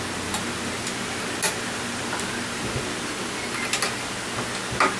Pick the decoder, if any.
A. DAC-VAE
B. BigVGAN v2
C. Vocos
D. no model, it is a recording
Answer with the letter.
D